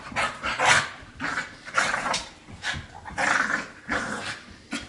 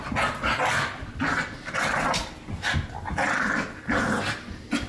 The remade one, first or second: first